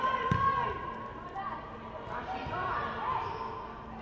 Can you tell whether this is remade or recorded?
recorded